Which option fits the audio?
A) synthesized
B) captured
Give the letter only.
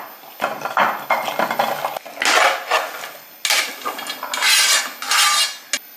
B